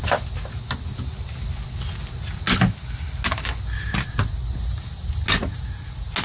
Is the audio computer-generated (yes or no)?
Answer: no